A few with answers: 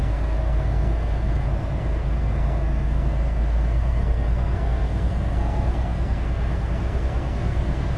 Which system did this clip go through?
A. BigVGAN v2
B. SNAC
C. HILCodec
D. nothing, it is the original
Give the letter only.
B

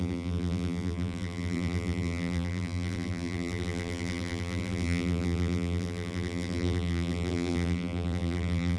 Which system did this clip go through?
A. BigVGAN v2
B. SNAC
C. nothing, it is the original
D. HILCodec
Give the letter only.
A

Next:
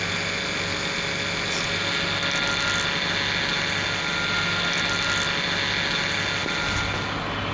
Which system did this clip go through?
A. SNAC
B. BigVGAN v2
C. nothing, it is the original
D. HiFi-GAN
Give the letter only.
C